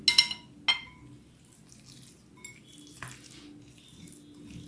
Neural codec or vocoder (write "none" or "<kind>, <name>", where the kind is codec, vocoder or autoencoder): none